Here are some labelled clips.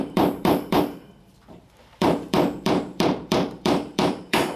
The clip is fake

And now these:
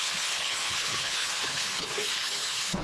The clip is fake